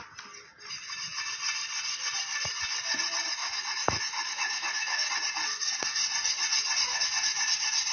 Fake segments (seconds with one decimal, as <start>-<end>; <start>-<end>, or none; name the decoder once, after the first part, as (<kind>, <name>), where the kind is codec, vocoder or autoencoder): 3.4-5.1 (autoencoder, DAC-VAE)